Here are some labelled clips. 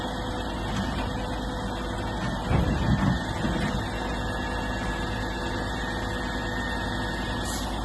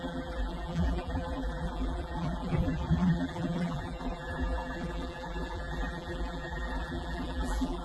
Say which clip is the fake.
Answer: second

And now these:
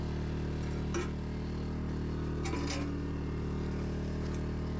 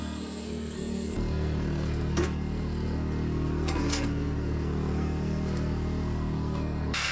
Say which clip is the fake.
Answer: second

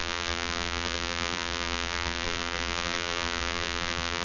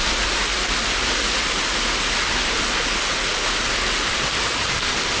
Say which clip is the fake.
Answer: first